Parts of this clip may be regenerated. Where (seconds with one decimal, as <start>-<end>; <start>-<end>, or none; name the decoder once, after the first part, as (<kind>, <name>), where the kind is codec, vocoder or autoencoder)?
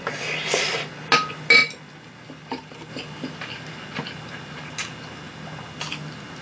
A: none